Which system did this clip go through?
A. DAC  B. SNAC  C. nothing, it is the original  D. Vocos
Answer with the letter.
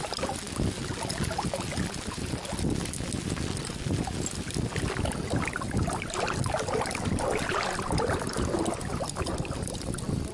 C